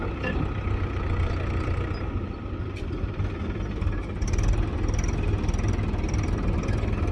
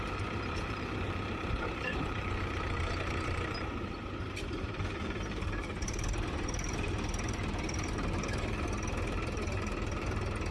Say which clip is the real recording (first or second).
first